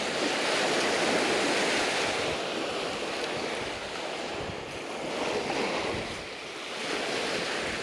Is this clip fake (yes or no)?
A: no